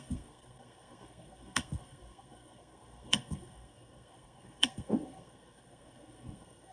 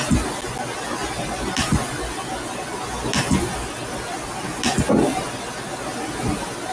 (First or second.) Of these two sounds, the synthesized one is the first